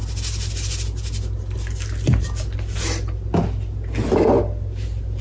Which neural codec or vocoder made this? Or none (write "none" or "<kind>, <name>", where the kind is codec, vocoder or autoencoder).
none